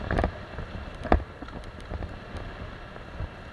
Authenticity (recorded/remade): recorded